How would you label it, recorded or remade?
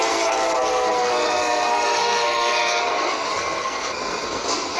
remade